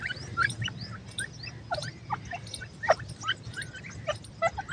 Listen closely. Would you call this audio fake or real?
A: real